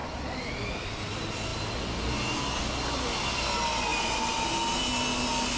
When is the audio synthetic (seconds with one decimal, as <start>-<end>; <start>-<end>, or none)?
none